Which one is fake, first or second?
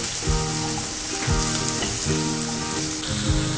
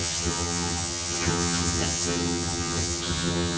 second